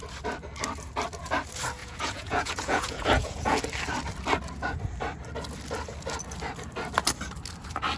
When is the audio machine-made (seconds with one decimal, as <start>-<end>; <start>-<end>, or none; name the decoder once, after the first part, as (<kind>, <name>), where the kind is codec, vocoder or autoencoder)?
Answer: 1.8-3.6 (vocoder, Vocos)